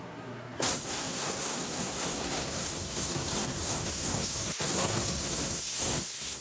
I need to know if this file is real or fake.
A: fake